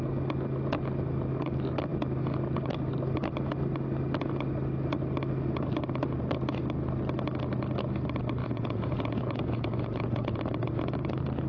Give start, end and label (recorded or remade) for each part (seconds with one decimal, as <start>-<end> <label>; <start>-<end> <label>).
0.0-8.4 recorded; 8.4-10.4 remade; 10.4-11.5 recorded